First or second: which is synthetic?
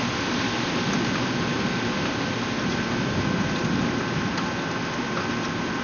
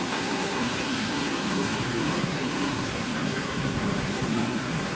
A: second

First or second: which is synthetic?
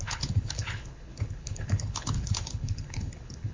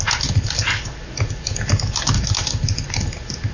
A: first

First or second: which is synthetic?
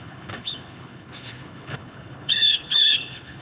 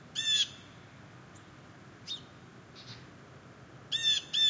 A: first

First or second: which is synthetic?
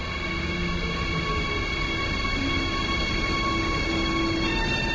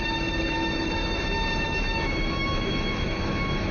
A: second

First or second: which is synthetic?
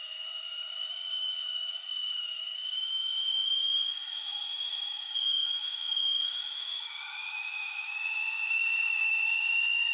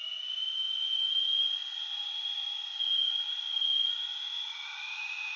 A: first